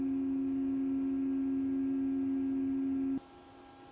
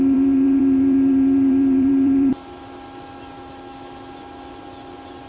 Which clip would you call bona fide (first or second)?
first